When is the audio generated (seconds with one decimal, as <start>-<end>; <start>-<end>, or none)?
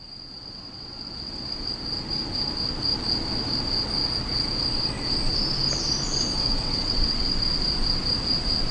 0.4-1.7; 6.3-7.4